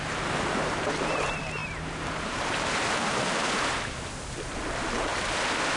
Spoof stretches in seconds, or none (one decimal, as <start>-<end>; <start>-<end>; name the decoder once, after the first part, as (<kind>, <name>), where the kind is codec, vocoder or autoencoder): 0.0-5.1 (vocoder, BigVGAN v2)